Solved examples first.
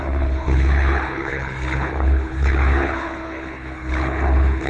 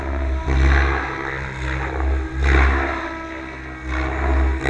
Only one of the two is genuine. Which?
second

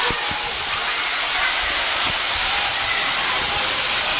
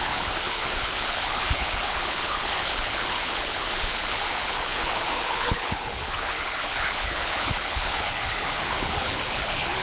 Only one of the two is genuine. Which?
first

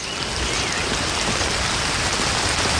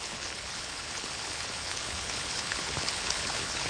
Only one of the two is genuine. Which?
first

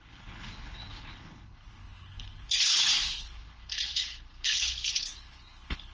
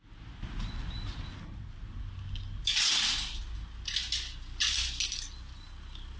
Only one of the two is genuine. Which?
second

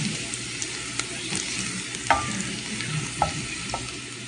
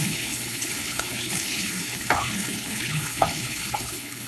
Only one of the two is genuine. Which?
first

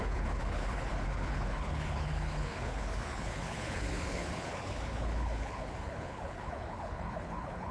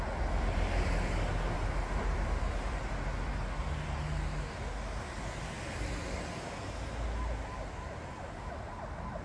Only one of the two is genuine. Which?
second